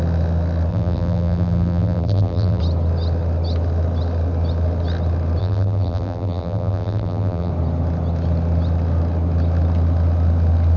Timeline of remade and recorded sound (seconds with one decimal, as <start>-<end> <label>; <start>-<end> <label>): 0.0-0.7 recorded; 0.7-2.6 remade; 2.6-5.4 recorded; 5.4-7.5 remade; 7.5-10.8 recorded